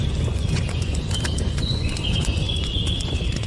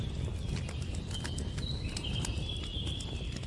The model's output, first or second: first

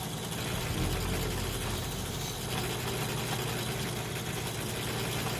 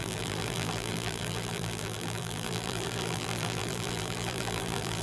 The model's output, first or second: second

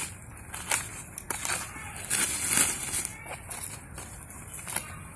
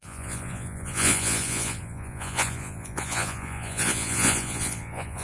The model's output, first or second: second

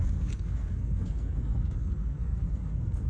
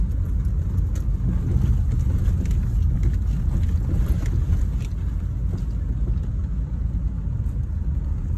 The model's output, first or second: first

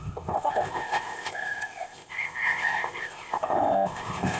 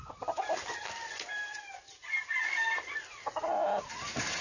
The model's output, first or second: first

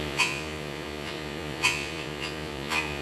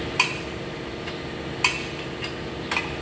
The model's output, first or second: first